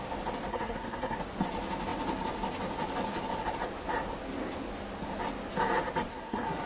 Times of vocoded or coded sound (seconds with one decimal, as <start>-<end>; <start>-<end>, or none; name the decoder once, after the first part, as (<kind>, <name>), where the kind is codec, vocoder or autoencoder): 0.5-1.2 (codec, SNAC); 6.1-6.7